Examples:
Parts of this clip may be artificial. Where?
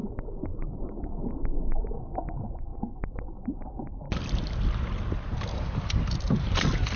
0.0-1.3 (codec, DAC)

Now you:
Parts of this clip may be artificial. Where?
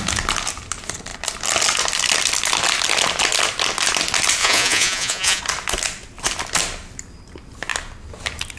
4.4-5.4 (vocoder, Vocos)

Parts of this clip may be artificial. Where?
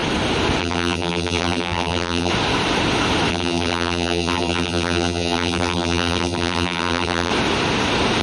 0.6-2.3 (vocoder, BigVGAN v2); 3.3-7.3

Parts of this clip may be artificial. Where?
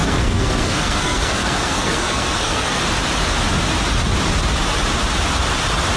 0.0-2.8 (codec, SNAC)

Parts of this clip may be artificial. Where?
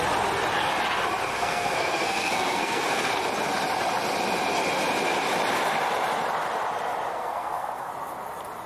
1.3-3.1 (codec, SNAC); 7.1-7.9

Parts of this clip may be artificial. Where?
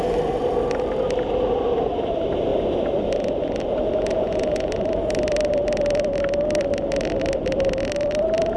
4.1-4.7 (vocoder, Vocos)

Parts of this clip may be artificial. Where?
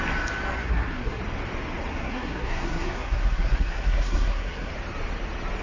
0.6-1.2 (codec, SNAC); 1.9-4.7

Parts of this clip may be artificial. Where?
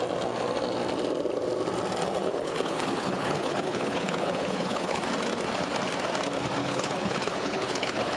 2.2-5.0 (codec, HILCodec); 6.6-8.2